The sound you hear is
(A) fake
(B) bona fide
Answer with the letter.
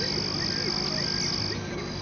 B